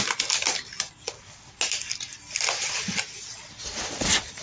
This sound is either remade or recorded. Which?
recorded